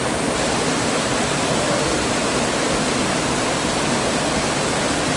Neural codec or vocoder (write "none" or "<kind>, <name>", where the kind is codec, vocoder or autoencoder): none